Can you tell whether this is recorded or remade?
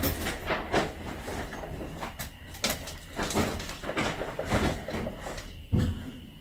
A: recorded